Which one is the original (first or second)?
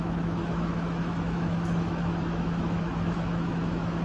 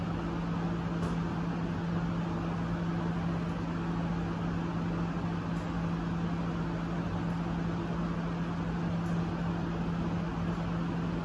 second